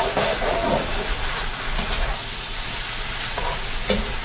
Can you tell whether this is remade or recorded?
remade